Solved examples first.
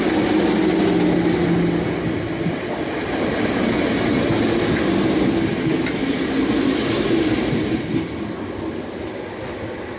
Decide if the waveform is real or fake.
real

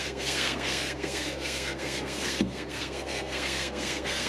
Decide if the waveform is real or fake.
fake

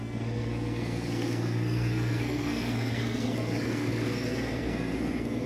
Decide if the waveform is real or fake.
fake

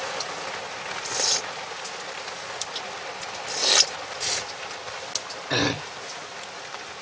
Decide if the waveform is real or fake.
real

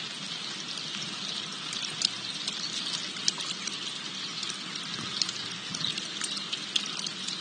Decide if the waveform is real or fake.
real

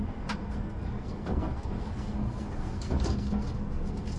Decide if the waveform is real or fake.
fake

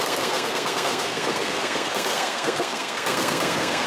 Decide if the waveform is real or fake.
fake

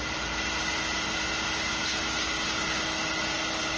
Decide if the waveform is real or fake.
real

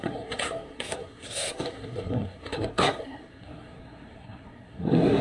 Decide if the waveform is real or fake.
fake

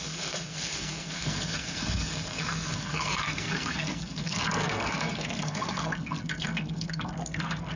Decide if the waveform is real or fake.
fake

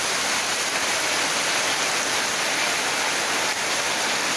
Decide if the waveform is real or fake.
real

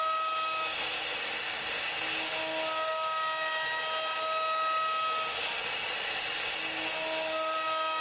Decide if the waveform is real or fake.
real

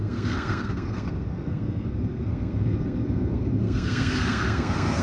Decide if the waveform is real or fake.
fake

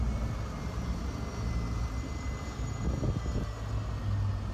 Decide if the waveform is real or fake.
real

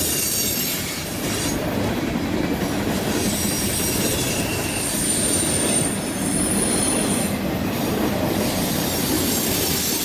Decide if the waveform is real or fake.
real